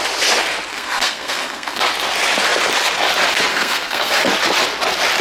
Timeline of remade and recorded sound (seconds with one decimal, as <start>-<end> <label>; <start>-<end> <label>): 0.0-0.7 recorded; 0.7-1.8 remade; 1.8-3.5 recorded; 3.5-4.2 remade; 4.2-5.2 recorded